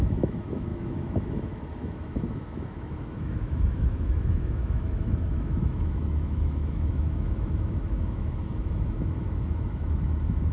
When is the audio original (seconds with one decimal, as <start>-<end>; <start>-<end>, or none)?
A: none